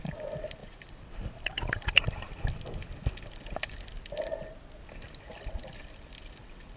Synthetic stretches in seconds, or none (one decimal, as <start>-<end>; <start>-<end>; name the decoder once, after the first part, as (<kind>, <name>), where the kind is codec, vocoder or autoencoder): 0.6-2.8 (vocoder, BigVGAN v2)